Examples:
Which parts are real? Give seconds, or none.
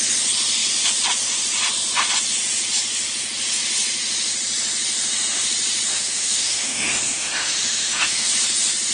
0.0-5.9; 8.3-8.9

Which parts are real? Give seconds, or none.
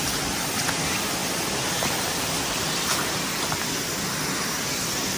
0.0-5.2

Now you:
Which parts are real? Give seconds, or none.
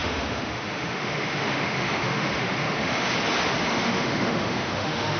3.1-3.7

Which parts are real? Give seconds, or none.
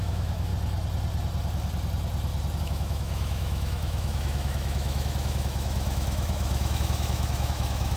0.5-2.6